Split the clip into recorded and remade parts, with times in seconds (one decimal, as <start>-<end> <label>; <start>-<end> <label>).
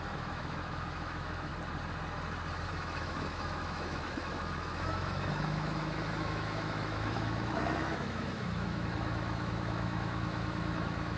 0.0-1.5 remade; 1.5-2.7 recorded; 2.7-11.2 remade